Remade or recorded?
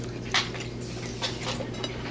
recorded